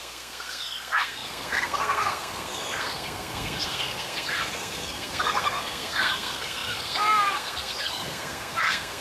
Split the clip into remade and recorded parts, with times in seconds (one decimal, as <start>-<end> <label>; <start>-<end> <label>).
0.0-9.0 remade

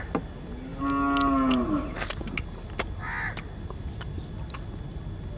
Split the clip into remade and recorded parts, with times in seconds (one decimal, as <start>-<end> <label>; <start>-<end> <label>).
0.0-5.4 recorded

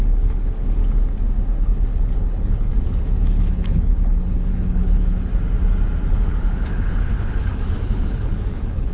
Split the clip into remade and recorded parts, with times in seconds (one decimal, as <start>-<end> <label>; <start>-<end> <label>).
0.0-0.8 remade; 0.8-1.6 recorded; 1.6-2.7 remade; 2.7-3.2 recorded; 3.2-5.3 remade; 5.3-6.1 recorded; 6.1-8.9 remade

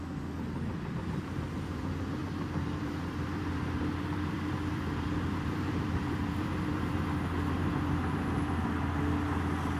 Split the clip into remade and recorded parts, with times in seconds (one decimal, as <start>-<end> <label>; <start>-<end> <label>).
0.0-2.2 recorded; 2.2-7.0 remade; 7.0-9.8 recorded

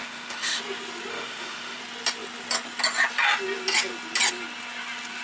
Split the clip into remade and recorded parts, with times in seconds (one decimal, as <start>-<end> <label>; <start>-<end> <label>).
0.0-0.6 remade; 0.6-1.1 recorded; 1.1-1.8 remade; 1.8-5.2 recorded

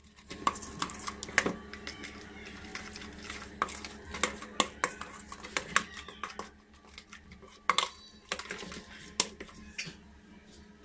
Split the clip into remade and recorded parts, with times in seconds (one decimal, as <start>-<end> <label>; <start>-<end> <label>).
0.0-10.8 recorded

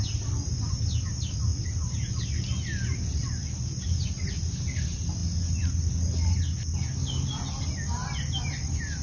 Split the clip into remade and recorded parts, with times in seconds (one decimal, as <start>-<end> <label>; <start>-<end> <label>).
0.0-9.0 recorded

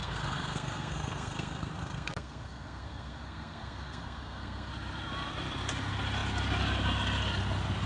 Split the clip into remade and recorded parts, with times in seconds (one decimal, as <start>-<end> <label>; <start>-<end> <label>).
0.0-4.7 remade; 4.7-7.9 recorded